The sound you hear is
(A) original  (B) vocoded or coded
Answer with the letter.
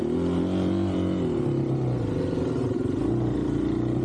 A